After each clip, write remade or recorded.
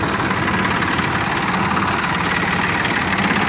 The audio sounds recorded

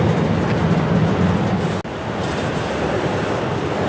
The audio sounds recorded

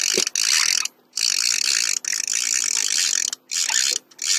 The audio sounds recorded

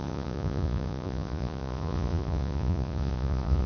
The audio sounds remade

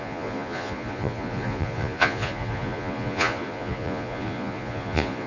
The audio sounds remade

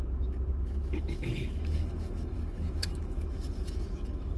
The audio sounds remade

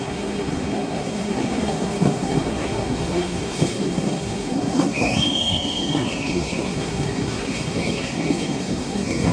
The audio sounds remade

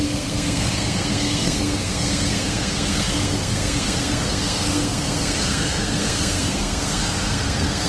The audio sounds remade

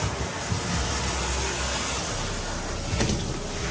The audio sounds recorded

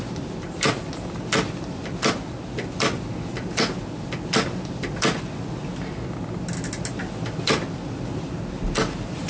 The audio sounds recorded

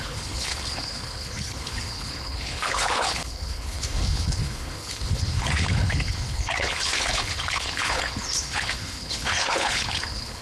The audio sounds remade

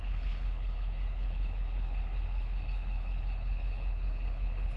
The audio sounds remade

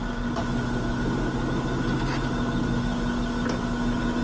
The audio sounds recorded